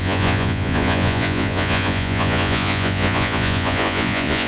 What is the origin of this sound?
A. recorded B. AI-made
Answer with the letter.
B